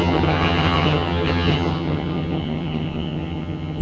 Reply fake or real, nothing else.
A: fake